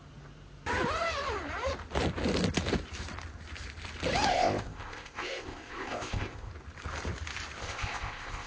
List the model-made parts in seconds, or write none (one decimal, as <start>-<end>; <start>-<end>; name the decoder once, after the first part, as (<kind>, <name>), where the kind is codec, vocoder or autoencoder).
4.3-6.5 (codec, ZipCodec); 7.6-8.5